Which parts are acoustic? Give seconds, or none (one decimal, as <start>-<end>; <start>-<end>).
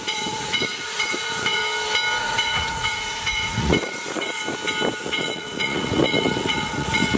1.6-2.2; 4.4-5.0